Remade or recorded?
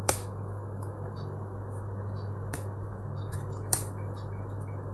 remade